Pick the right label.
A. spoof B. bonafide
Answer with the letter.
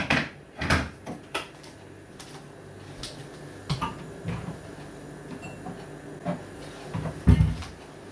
B